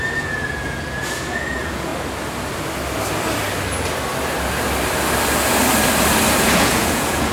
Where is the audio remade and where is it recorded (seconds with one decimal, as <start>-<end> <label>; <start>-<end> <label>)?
0.0-1.9 remade; 1.9-6.3 recorded; 6.3-7.3 remade